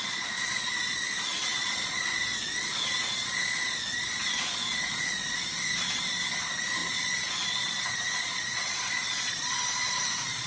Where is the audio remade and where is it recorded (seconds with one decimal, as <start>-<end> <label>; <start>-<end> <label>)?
0.0-10.5 remade